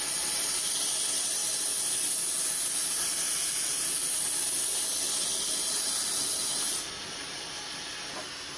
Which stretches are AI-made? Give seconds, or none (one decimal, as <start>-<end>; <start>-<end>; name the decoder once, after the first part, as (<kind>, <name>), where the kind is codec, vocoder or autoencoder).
none